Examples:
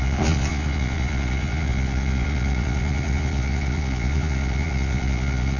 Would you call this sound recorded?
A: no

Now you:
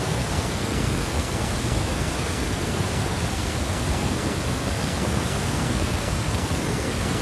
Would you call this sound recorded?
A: no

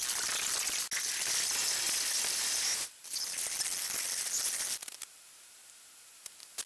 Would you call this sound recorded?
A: yes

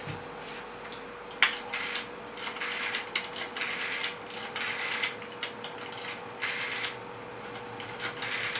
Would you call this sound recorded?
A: yes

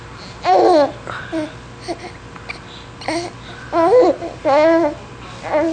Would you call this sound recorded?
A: yes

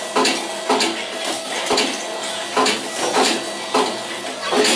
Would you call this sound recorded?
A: yes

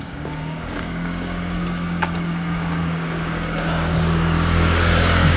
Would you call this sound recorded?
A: no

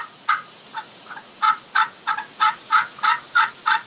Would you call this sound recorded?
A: no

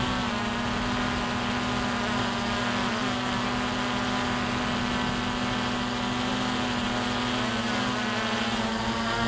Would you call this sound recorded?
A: yes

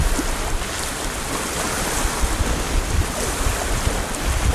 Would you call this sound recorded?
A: yes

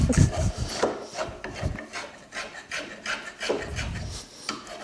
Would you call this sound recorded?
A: yes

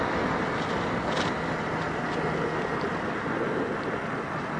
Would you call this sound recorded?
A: yes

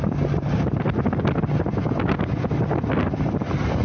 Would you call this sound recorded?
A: yes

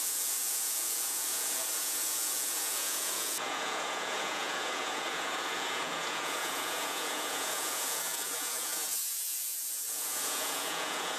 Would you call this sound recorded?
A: no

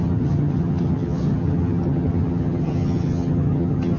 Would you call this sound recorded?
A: no